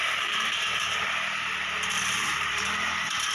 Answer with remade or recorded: remade